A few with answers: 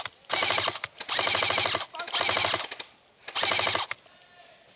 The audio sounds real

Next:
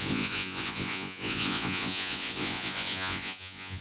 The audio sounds fake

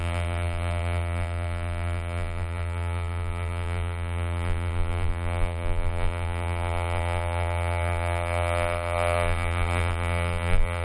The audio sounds fake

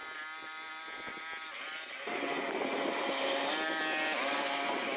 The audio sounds real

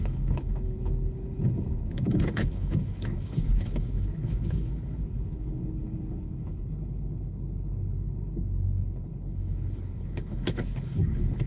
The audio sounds fake